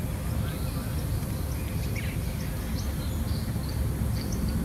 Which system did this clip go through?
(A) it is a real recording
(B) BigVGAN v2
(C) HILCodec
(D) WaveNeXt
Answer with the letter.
A